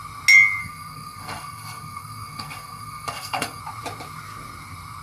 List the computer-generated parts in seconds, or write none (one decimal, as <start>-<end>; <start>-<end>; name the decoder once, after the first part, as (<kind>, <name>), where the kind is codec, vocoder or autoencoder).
0.6-3.6 (codec, SNAC)